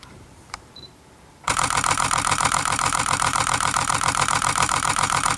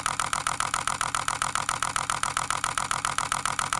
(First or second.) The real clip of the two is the second